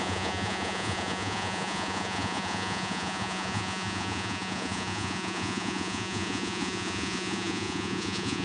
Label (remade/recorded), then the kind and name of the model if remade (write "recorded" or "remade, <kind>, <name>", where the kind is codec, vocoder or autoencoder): remade, vocoder, Vocos